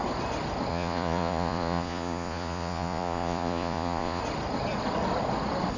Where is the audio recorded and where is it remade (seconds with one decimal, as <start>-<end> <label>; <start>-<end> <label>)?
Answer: 0.0-0.7 recorded; 0.7-4.2 remade; 4.2-5.8 recorded